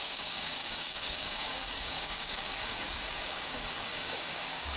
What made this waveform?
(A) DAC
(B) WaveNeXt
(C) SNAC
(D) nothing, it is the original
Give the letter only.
A